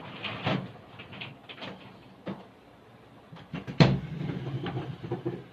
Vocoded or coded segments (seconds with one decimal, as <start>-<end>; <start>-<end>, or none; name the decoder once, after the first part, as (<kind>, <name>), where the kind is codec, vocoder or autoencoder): 1.4-4.5 (vocoder, BigVGAN v2)